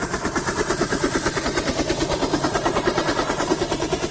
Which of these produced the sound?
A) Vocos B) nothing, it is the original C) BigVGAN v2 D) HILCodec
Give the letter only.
C